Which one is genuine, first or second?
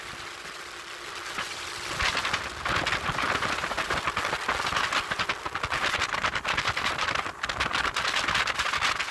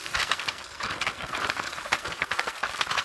first